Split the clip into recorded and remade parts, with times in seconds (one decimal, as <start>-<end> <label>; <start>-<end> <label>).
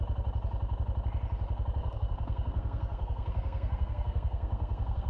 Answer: 0.0-1.8 recorded; 1.8-5.1 remade